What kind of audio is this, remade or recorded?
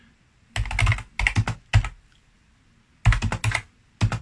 recorded